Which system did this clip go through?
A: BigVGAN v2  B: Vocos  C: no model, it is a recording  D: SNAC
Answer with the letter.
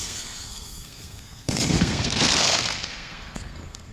D